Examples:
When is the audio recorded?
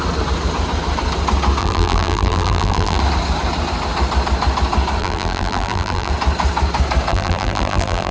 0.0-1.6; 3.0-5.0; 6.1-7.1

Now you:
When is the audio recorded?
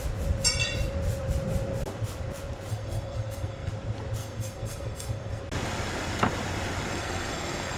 0.0-2.7; 3.7-4.2; 5.4-6.9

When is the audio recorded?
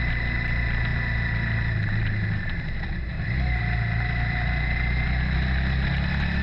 0.0-6.4